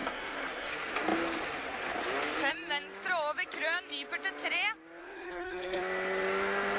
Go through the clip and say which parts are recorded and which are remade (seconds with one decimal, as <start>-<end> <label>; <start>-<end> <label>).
0.0-0.7 remade; 0.7-5.0 recorded; 5.0-5.8 remade; 5.8-6.8 recorded